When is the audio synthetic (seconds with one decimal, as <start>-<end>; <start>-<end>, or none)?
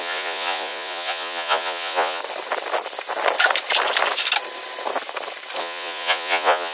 0.0-2.2; 5.6-6.7